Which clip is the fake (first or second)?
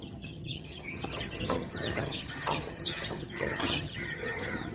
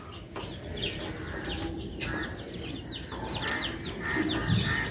first